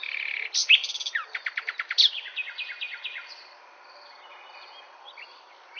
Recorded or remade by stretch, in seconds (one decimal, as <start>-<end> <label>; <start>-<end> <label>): 0.0-0.8 recorded; 0.8-3.3 remade; 3.3-5.8 recorded